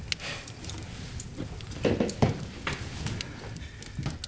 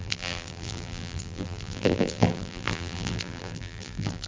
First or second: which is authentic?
first